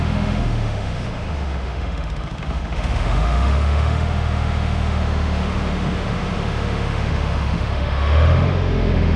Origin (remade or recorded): remade